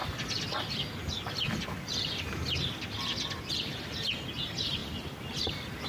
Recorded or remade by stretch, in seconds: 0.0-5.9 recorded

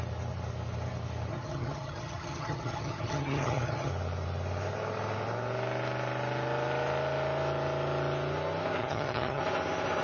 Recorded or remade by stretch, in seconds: 0.0-1.3 recorded; 1.3-3.9 remade; 3.9-8.8 recorded; 8.8-9.4 remade; 9.4-10.0 recorded

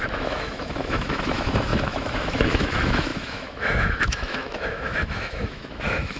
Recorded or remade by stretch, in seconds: 0.0-6.2 remade

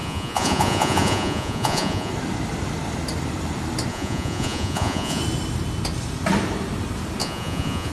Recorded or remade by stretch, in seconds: 0.0-2.1 remade; 2.1-3.9 recorded; 3.9-5.2 remade; 5.2-7.2 recorded; 7.2-7.9 remade

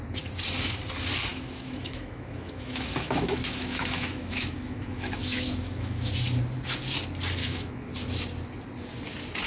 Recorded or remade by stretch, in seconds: 0.0-1.3 recorded; 1.3-6.1 remade; 6.1-7.4 recorded; 7.4-7.9 remade; 7.9-9.5 recorded